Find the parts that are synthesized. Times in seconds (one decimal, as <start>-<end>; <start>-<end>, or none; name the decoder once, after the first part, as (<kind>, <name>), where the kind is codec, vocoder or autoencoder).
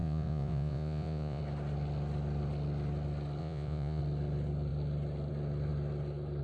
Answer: 0.0-1.4 (vocoder, Vocos); 3.4-4.0